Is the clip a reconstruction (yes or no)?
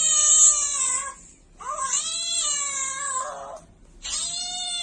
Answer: no